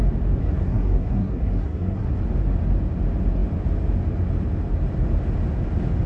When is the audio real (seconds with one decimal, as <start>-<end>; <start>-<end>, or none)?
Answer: 0.0-0.4; 2.2-6.1

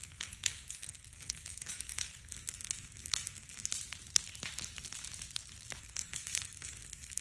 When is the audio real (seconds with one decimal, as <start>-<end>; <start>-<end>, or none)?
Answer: 3.7-5.8

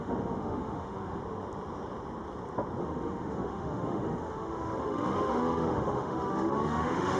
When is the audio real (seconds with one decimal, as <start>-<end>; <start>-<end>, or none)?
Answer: 1.2-2.8

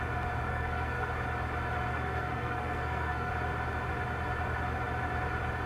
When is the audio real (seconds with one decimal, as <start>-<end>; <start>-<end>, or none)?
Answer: 0.0-0.5; 1.1-1.9; 3.3-5.7

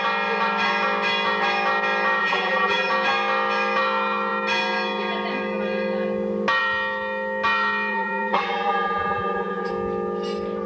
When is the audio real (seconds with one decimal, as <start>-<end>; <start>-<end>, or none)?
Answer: 0.0-2.2; 2.9-7.9; 9.7-10.7

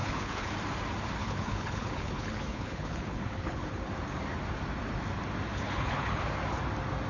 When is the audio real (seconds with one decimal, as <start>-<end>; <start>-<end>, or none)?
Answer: 0.5-1.2; 3.9-5.5; 6.2-7.1

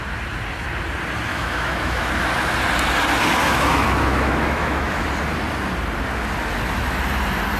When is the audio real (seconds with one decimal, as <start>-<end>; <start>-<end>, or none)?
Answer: 0.0-1.3; 2.1-3.4; 5.1-7.6

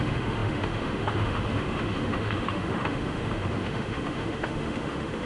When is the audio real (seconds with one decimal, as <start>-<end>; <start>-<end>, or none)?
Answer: none